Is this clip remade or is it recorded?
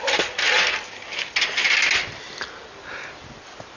recorded